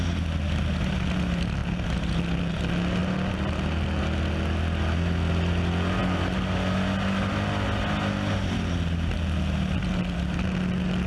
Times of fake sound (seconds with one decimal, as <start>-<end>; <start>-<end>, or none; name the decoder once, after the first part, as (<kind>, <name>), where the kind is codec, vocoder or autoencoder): none